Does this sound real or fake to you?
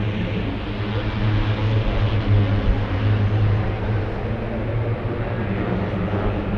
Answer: real